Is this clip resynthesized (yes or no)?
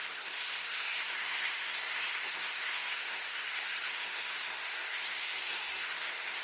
yes